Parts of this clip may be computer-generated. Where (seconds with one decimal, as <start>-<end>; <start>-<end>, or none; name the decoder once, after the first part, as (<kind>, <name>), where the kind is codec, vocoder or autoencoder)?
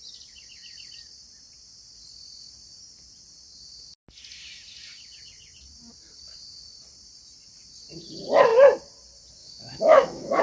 9.4-10.4 (autoencoder, DAC-VAE)